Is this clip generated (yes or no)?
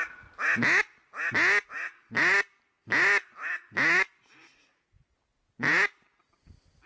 no